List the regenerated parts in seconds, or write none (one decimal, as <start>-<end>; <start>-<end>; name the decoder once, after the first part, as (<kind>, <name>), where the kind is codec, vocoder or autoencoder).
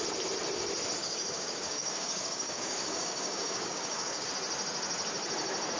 1.0-4.3 (codec, DAC)